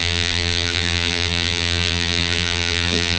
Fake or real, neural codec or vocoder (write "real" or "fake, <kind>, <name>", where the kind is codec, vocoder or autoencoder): fake, vocoder, BigVGAN v2